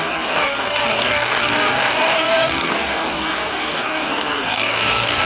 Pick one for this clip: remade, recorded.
remade